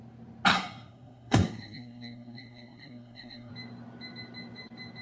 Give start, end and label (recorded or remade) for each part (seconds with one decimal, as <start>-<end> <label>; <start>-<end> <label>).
0.0-0.5 recorded; 0.5-3.5 remade; 3.5-5.0 recorded